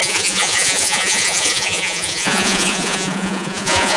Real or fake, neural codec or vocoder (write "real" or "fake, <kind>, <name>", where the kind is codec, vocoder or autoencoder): fake, vocoder, Vocos